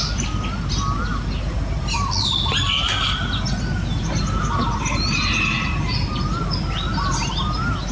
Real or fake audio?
real